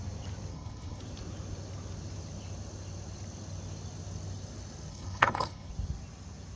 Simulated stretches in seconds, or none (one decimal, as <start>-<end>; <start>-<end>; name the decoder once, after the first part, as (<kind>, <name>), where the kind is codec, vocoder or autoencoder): 0.5-1.0 (codec, HILCodec); 4.9-5.7